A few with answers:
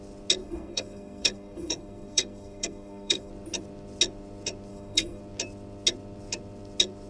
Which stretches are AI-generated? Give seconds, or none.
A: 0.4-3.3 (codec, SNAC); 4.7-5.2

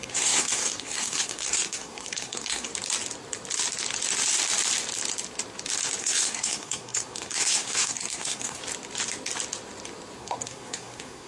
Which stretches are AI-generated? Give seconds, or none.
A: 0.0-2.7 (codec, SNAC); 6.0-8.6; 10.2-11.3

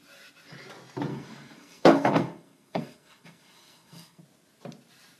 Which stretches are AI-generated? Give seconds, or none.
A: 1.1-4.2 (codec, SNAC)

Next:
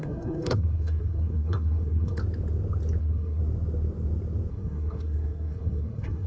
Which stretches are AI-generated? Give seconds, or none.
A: 0.0-2.2 (codec, SNAC); 3.0-3.4; 4.5-6.3

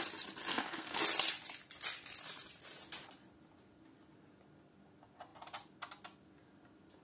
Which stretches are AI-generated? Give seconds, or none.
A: 0.5-1.0 (codec, SNAC)

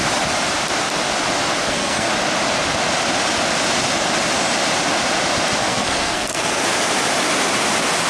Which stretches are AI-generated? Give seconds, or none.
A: 1.6-2.1 (codec, SNAC); 5.6-6.6

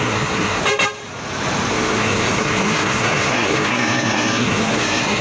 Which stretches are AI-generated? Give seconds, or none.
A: 0.0-0.6 (codec, SNAC); 1.7-5.2

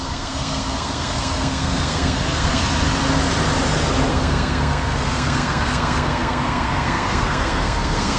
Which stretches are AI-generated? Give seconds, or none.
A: 0.0-2.6 (codec, SNAC); 4.1-8.2